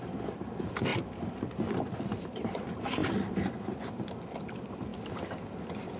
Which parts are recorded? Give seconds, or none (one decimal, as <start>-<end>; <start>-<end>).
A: 4.9-6.0